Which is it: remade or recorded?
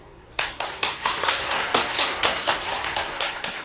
remade